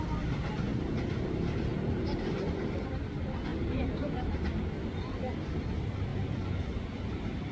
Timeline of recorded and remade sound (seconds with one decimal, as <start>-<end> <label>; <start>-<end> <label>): 0.0-1.7 recorded; 1.7-2.8 remade; 2.8-3.5 recorded; 3.5-4.6 remade; 4.6-7.5 recorded

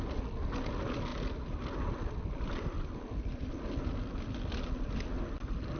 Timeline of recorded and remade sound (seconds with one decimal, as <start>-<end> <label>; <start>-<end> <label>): 0.0-5.8 recorded

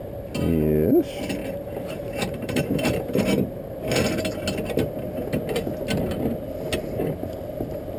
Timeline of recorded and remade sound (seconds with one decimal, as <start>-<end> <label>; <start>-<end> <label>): 0.0-1.4 recorded; 1.4-3.6 remade; 3.6-8.0 recorded